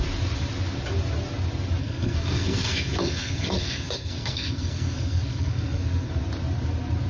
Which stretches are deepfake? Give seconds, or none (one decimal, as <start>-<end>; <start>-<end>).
1.8-6.1

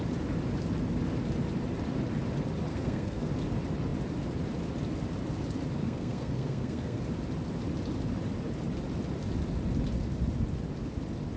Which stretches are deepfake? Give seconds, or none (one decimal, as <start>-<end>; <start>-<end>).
2.7-3.3; 5.8-7.0

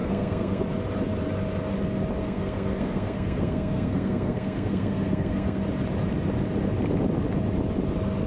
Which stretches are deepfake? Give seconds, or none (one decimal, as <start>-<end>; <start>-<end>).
0.0-0.6; 2.2-5.6

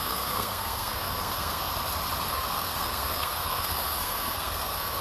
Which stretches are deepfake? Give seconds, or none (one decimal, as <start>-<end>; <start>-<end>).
0.0-1.7; 2.3-5.0

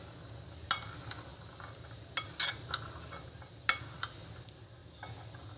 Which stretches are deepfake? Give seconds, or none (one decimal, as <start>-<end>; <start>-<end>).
none

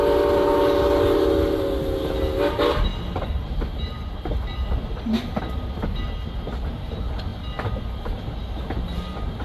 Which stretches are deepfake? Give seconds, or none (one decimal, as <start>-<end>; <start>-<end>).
none

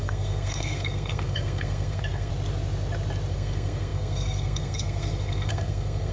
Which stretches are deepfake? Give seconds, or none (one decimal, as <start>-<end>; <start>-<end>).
0.0-2.3; 3.3-6.1

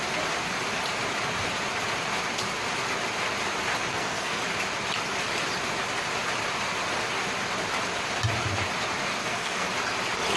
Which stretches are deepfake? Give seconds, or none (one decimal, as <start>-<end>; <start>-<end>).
3.9-4.4; 9.2-9.7